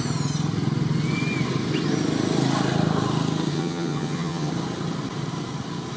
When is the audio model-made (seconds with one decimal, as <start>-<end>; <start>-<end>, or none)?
3.5-4.5